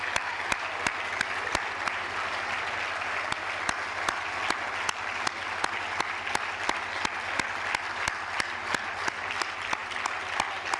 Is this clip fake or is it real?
real